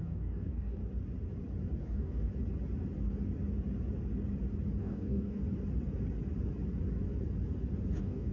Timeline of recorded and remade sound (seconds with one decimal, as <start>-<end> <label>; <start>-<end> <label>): 0.0-0.8 remade; 0.8-1.8 recorded; 1.8-2.3 remade; 2.3-4.8 recorded; 4.8-5.4 remade; 5.4-7.9 recorded; 7.9-8.3 remade